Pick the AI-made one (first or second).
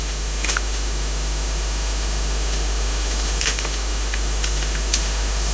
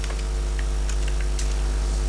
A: first